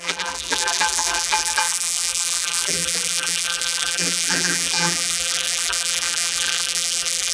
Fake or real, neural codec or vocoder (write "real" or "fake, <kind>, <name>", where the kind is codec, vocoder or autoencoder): fake, vocoder, BigVGAN v2